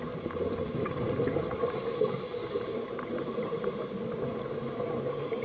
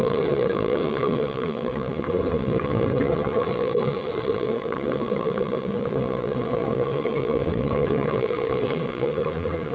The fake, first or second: second